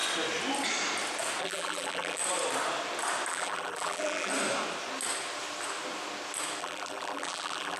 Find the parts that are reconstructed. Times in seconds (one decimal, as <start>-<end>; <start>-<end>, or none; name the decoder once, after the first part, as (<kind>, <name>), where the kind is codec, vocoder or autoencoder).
1.4-2.2 (vocoder, BigVGAN v2); 3.3-4.3; 6.6-7.8